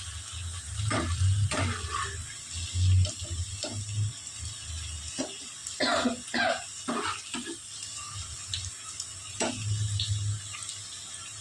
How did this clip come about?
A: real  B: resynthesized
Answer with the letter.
A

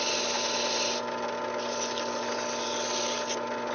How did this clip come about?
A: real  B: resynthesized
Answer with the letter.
A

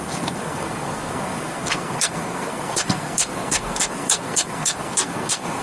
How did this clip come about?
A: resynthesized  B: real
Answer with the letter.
A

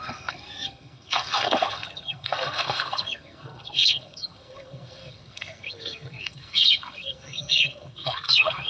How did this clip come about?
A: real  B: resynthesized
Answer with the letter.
B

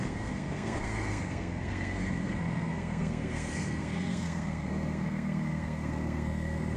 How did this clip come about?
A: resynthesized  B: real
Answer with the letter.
A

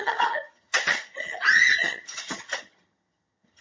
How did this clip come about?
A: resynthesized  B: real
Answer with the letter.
A